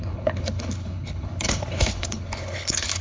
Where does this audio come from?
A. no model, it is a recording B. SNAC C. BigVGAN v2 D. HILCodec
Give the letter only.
D